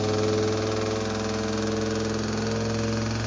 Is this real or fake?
real